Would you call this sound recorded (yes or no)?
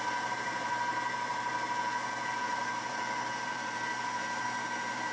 no